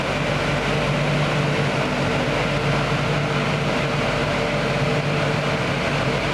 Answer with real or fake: real